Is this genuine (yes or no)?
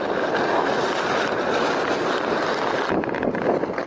yes